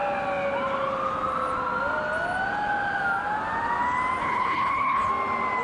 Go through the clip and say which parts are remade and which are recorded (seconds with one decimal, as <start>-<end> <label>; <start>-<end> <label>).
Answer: 0.0-4.2 recorded; 4.2-5.1 remade; 5.1-5.6 recorded